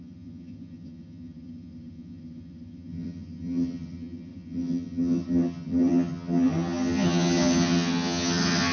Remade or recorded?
remade